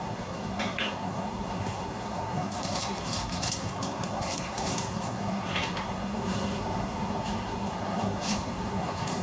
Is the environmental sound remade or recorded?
remade